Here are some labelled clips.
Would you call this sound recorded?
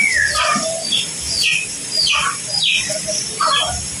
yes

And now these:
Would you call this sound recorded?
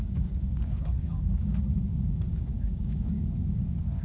no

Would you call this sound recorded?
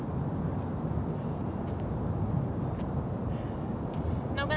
yes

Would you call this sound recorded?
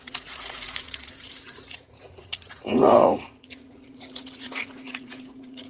no